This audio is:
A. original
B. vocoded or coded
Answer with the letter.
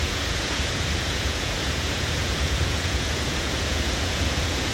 B